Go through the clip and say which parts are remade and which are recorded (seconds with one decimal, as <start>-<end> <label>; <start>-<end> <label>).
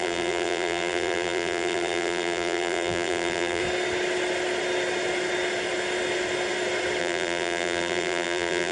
0.0-3.6 remade; 3.6-7.0 recorded; 7.0-8.7 remade